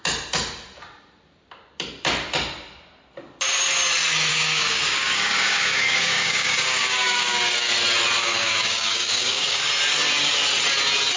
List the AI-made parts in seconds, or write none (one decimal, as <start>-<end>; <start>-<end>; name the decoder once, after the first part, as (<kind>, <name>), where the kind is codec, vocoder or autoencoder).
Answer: 4.3-7.7 (codec, DAC); 8.2-9.6